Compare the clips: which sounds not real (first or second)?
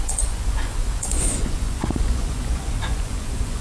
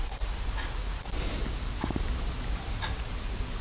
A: first